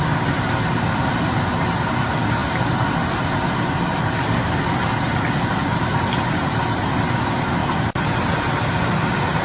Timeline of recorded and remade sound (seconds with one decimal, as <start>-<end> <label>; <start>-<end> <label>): 0.0-9.4 recorded